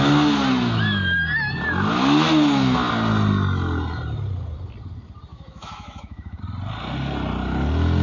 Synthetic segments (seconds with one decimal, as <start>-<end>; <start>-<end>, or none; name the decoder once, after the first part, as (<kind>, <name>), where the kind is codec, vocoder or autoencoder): 5.3-6.4 (autoencoder, DAC-VAE)